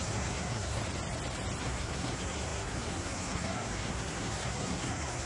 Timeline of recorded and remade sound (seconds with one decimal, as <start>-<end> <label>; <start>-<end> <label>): 0.0-0.8 remade; 0.8-1.6 recorded; 1.6-5.3 remade